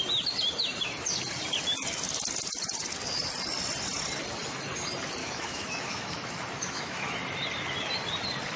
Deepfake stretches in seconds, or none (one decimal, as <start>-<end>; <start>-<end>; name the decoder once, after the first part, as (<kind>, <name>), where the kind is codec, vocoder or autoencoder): 5.2-7.2 (autoencoder, DAC-VAE)